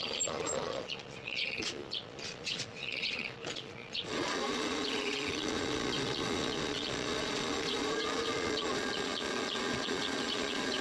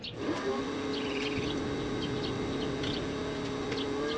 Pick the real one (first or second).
second